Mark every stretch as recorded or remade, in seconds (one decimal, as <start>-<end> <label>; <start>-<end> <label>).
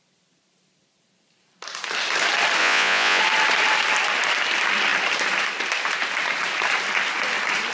0.0-2.6 recorded; 2.6-3.2 remade; 3.2-7.7 recorded